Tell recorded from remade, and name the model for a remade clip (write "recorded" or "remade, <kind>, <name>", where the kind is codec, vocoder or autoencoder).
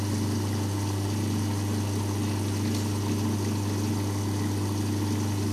recorded